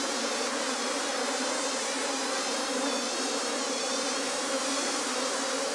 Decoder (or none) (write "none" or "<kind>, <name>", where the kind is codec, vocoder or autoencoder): vocoder, BigVGAN v2